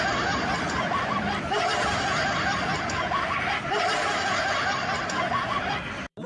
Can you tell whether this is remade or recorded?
recorded